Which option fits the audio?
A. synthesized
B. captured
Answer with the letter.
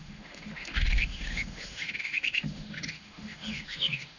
A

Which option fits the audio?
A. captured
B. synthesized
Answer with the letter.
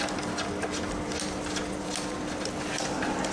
A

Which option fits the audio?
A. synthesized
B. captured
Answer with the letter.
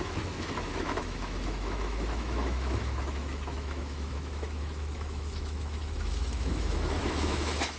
A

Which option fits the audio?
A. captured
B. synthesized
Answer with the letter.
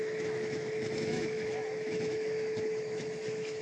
B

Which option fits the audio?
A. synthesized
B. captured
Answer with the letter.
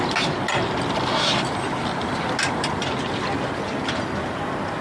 B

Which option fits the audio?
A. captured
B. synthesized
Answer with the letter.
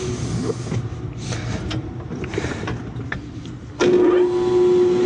A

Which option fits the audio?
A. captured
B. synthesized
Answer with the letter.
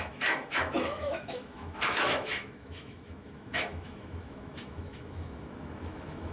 B